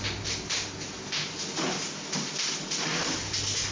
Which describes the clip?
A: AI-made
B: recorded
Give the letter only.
B